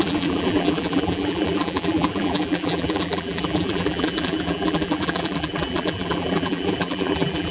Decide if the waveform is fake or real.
fake